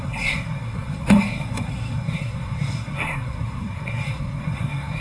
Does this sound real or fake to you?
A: fake